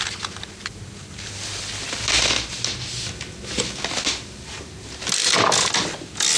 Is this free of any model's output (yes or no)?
yes